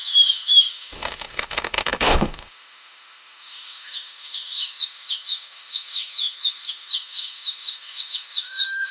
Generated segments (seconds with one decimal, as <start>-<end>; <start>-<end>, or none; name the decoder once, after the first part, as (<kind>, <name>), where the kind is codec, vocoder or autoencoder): 0.0-8.9 (autoencoder, DAC-VAE)